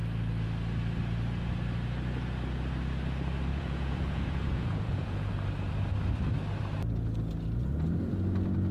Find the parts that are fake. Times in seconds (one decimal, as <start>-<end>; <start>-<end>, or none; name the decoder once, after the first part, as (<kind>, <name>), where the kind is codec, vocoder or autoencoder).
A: 3.5-5.3 (vocoder, Vocos)